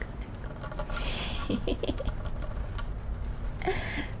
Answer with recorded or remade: recorded